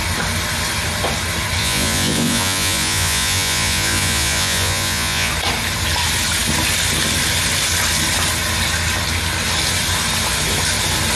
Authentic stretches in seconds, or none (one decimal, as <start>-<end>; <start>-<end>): 0.0-1.6; 5.3-11.2